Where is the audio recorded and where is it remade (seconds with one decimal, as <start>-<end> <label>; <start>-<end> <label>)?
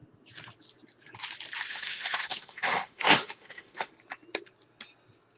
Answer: 0.0-1.7 recorded; 1.7-3.9 remade; 3.9-5.4 recorded